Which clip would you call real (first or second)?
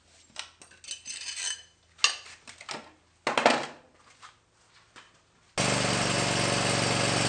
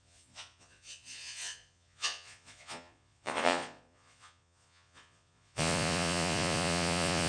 first